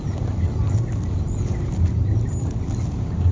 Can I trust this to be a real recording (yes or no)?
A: yes